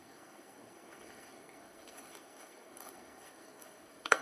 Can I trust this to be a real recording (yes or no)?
no